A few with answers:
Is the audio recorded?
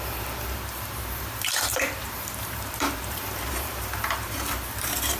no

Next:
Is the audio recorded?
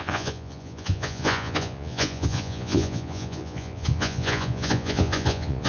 no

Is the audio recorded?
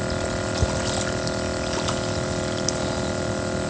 yes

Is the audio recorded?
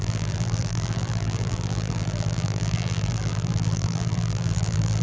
no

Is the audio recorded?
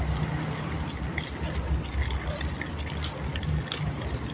yes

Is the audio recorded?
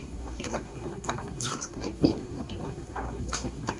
no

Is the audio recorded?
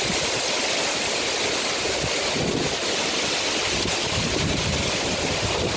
yes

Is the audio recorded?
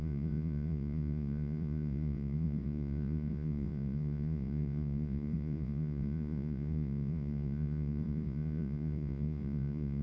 no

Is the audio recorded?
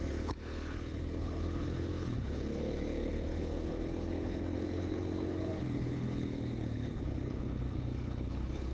no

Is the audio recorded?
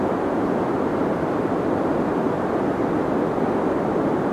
yes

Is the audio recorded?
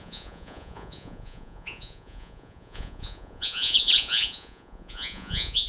no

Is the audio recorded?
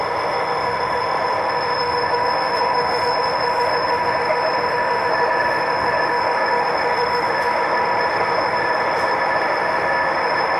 no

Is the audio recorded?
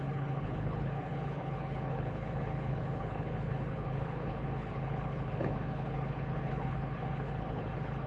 no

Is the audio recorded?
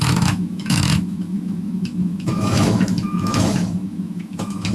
no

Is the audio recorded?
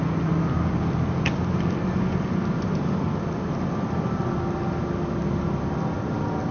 yes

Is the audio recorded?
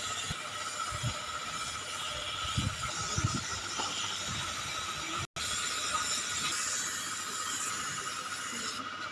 yes